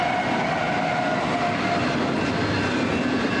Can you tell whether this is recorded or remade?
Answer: recorded